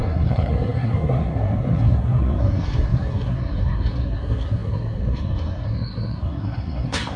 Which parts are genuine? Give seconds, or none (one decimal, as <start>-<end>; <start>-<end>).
none